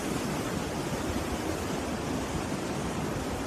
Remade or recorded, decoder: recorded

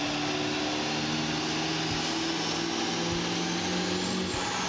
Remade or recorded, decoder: recorded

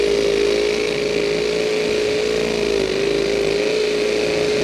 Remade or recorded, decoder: recorded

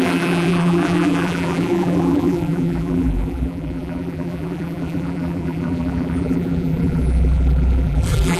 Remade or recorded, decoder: remade, vocoder, BigVGAN v2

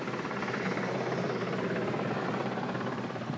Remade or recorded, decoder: remade, vocoder, BigVGAN v2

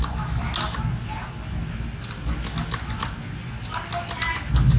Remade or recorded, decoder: recorded